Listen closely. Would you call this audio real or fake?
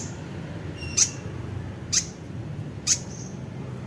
fake